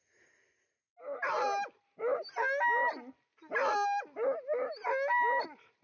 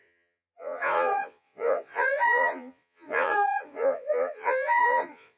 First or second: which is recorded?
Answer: first